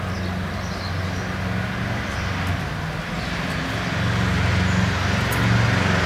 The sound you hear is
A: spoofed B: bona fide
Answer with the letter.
B